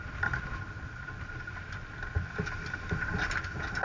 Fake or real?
real